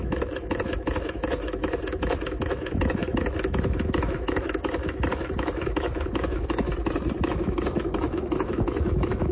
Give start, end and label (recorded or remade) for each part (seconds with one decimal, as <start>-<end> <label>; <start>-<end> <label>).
0.0-6.7 remade; 6.7-7.3 recorded; 7.3-9.3 remade